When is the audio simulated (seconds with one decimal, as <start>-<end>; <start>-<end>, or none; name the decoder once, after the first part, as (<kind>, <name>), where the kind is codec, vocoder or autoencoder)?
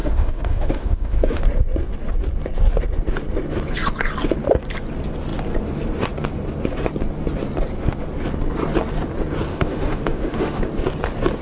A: 0.0-1.4 (autoencoder, DAC-VAE); 9.5-10.6